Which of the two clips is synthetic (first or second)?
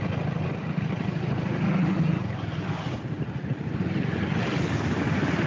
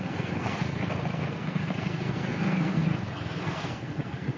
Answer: second